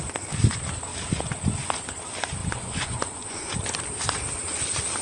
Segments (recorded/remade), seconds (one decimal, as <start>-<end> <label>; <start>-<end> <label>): 0.0-2.4 recorded; 2.4-3.5 remade; 3.5-5.0 recorded

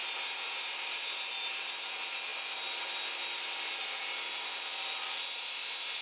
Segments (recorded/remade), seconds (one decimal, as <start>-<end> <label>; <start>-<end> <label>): 0.0-6.0 recorded

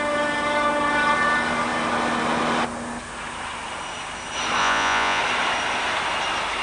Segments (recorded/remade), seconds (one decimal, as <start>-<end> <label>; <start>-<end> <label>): 0.0-4.6 recorded; 4.6-5.2 remade; 5.2-6.6 recorded

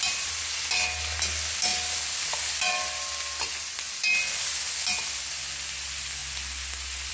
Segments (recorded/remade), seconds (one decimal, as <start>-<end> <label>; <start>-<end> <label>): 0.0-7.1 recorded

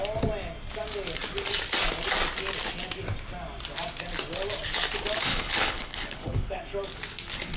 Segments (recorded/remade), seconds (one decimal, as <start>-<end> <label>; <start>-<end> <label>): 0.0-5.3 recorded; 5.3-6.6 remade; 6.6-7.6 recorded

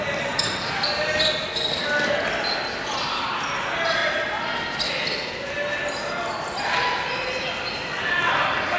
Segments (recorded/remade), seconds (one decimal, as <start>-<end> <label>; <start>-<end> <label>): 0.0-8.8 recorded

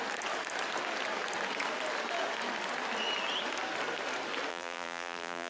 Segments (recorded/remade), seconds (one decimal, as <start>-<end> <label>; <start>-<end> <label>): 0.0-4.5 recorded; 4.5-5.5 remade